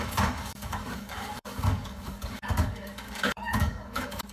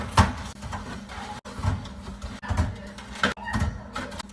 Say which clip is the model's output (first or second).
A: first